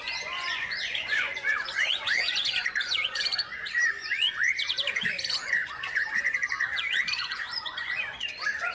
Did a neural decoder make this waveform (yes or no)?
yes